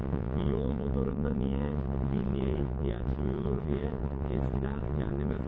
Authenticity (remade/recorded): remade